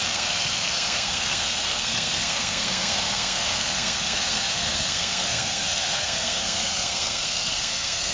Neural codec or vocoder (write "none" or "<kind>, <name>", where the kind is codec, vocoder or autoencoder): codec, SNAC